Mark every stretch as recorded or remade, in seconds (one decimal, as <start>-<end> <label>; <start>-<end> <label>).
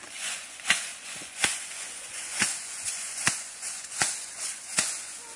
0.0-5.4 remade